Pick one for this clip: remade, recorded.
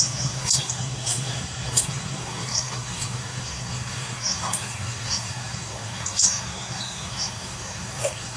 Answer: remade